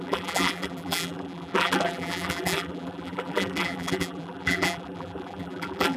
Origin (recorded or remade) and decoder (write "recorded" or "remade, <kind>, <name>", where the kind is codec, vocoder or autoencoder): remade, vocoder, BigVGAN v2